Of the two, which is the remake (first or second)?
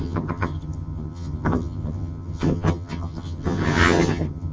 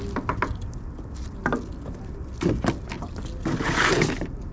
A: first